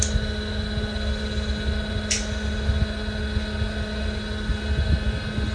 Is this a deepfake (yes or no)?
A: no